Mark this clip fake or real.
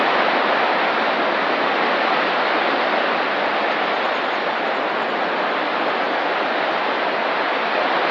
real